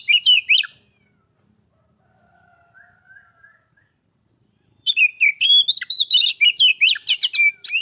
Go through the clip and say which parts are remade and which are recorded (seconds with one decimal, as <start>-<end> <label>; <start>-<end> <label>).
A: 0.0-5.1 remade; 5.1-5.7 recorded; 5.7-7.8 remade